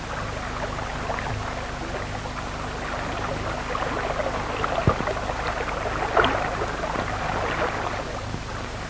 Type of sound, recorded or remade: recorded